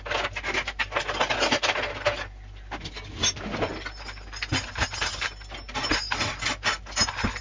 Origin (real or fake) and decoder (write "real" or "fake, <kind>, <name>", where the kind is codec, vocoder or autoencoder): real